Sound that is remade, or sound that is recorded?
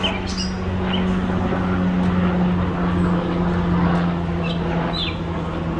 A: recorded